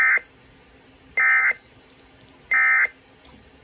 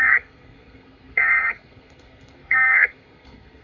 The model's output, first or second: second